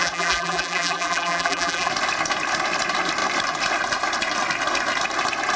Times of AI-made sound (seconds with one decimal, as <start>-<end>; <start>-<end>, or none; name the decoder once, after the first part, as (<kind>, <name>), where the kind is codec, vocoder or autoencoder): 0.0-1.9 (vocoder, BigVGAN v2)

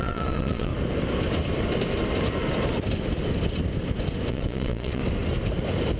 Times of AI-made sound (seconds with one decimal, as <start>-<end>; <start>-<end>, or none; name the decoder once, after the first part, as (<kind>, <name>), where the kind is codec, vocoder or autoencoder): 0.0-0.7 (vocoder, WaveNeXt); 4.3-5.0

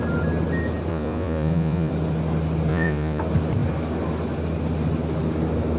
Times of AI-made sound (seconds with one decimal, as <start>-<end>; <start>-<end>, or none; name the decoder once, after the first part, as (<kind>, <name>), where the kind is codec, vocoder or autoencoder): 0.9-1.9 (vocoder, Vocos); 2.7-3.2